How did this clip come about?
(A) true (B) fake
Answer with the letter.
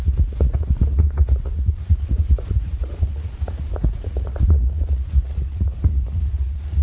B